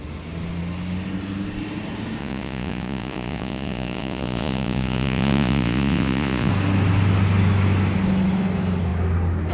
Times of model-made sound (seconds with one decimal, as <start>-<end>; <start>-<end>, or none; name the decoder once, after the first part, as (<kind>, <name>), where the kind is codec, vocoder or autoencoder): 2.2-6.5 (vocoder, Vocos)